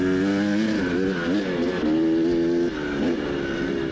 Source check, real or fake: real